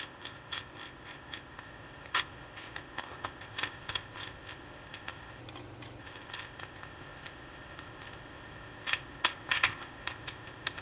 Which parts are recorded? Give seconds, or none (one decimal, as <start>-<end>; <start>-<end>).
5.4-6.0